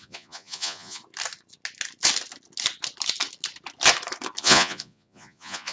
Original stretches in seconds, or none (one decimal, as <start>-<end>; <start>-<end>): 1.0-4.4